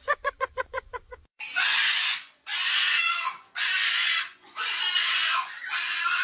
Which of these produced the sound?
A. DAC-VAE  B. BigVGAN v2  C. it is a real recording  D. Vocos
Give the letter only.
D